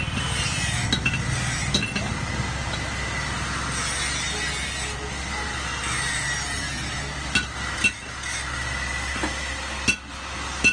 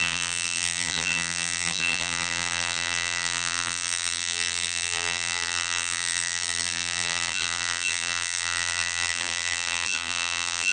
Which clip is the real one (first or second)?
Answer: first